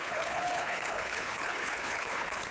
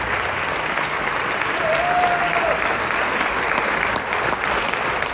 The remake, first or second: first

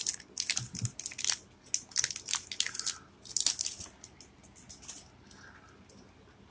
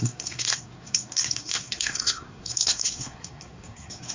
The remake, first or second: second